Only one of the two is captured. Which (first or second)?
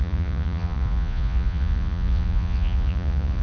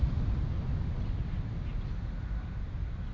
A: second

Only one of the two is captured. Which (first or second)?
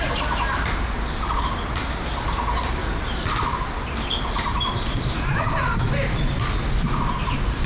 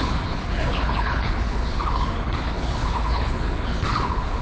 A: first